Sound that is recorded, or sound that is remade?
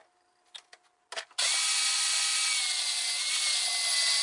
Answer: recorded